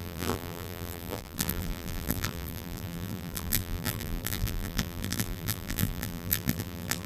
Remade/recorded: remade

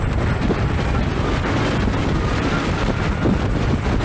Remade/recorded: remade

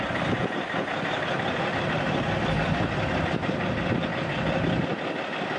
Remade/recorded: remade